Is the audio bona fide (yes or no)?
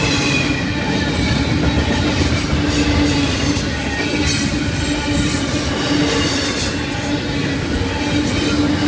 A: yes